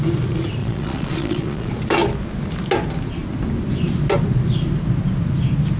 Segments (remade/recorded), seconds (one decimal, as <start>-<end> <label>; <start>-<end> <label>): 0.0-0.6 recorded; 0.6-1.7 remade; 1.7-5.8 recorded